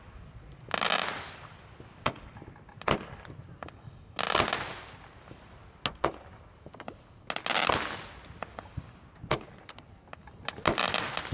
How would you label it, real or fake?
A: real